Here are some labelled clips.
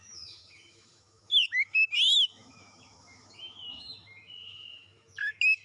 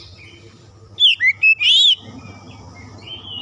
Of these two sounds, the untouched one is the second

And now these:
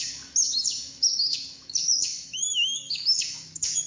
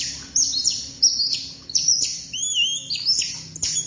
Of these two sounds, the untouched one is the second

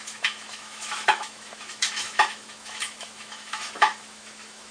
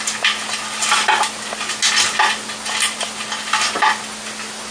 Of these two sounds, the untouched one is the second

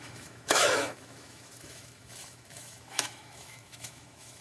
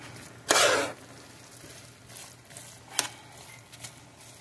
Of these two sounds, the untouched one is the second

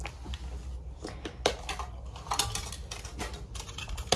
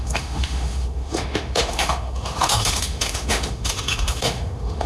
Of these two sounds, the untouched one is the first